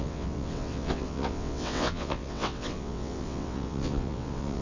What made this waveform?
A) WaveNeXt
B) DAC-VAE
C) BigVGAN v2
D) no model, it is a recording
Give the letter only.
A